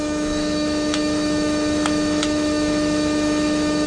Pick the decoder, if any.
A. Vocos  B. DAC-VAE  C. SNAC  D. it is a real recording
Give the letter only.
B